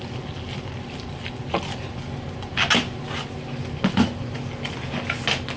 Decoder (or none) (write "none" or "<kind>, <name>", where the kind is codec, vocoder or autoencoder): none